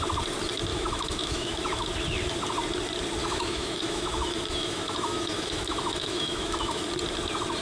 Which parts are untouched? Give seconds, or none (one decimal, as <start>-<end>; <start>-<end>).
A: 0.0-0.7; 1.9-3.2; 6.8-7.6